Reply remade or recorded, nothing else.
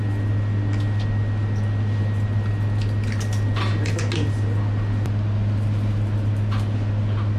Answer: recorded